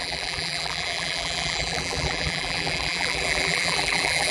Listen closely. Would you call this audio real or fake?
fake